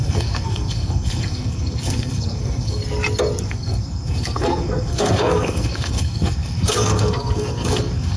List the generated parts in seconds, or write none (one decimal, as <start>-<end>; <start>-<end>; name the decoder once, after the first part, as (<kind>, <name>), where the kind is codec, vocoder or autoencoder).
0.0-2.8 (codec, SNAC); 3.4-8.2